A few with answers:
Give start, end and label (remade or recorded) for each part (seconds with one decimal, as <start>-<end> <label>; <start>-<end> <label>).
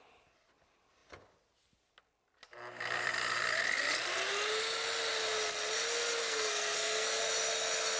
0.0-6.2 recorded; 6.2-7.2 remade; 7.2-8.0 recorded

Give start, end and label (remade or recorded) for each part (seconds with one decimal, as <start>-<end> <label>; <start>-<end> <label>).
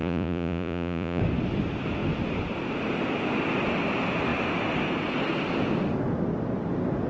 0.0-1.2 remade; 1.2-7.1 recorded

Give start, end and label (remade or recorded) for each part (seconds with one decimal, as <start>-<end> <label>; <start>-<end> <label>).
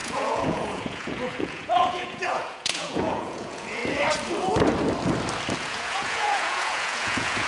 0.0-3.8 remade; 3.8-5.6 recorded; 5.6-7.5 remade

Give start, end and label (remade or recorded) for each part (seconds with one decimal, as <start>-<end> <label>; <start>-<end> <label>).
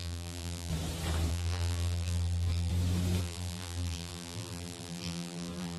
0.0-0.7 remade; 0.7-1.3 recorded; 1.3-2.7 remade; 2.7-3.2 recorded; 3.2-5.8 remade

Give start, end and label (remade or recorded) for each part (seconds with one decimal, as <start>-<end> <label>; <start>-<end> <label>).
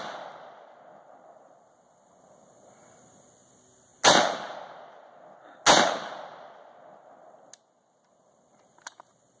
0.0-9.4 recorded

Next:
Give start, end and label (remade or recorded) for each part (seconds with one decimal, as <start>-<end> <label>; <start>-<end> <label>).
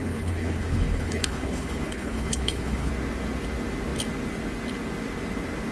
0.0-2.9 remade; 2.9-5.7 recorded